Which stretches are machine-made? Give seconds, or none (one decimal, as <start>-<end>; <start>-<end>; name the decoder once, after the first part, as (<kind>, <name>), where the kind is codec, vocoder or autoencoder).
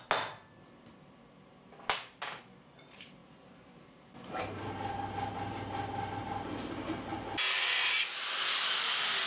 none